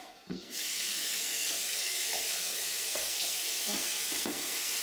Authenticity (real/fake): fake